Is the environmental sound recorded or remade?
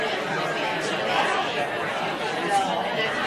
recorded